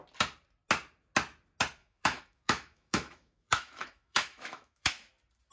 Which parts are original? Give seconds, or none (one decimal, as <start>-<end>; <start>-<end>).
0.0-1.8; 5.1-5.5